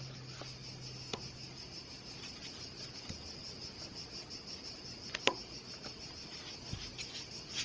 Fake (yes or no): no